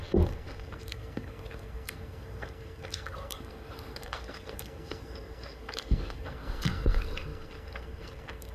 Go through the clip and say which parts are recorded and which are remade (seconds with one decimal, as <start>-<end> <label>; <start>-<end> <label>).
0.0-8.5 remade